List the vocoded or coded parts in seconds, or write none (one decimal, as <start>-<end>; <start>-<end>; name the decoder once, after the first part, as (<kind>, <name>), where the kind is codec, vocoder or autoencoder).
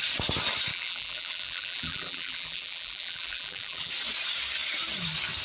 0.7-3.9 (vocoder, BigVGAN v2)